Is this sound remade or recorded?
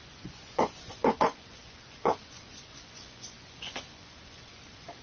remade